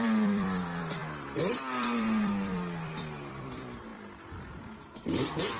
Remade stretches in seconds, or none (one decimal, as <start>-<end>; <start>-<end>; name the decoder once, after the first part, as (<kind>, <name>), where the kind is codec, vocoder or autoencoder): 0.0-5.6 (vocoder, BigVGAN v2)

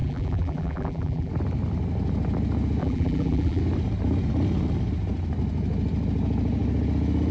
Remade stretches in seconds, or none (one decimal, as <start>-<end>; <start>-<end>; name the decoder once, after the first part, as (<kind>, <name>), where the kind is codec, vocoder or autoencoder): 0.0-1.3 (vocoder, BigVGAN v2); 2.8-3.6